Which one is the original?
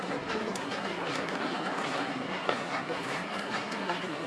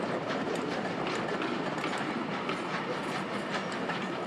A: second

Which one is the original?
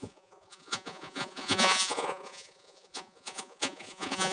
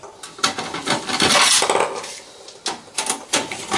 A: second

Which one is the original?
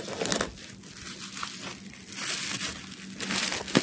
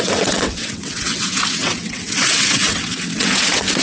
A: first